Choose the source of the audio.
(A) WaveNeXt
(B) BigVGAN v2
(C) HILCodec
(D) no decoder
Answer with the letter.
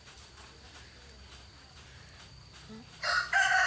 D